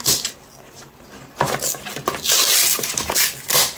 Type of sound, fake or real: real